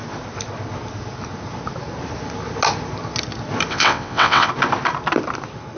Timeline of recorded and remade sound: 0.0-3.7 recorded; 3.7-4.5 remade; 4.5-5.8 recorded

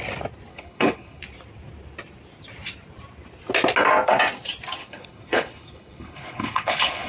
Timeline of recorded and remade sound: 0.0-0.5 recorded; 0.5-1.2 remade; 1.2-4.8 recorded; 4.8-7.1 remade

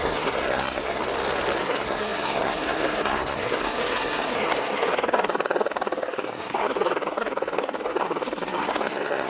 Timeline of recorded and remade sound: 0.0-1.0 remade; 1.0-1.6 recorded; 1.6-9.3 remade